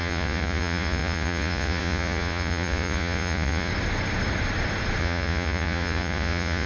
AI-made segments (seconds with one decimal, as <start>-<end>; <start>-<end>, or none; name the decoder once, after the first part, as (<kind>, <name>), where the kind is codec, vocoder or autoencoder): 0.0-3.7 (vocoder, Vocos); 5.0-6.7